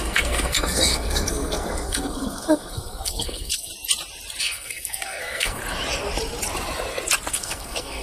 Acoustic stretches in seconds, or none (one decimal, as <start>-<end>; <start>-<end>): 3.7-4.4; 5.6-7.3